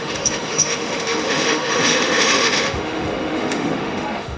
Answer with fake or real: fake